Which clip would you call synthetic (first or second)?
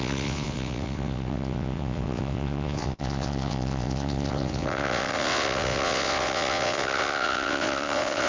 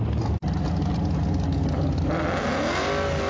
first